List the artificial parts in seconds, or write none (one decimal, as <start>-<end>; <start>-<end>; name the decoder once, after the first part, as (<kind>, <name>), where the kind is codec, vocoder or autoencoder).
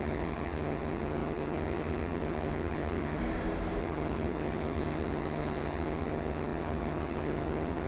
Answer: 0.0-3.2 (vocoder, HiFi-GAN); 3.8-7.9